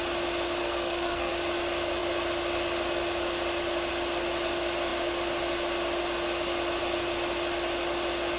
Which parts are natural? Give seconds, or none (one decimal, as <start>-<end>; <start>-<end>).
0.0-0.6; 1.3-8.4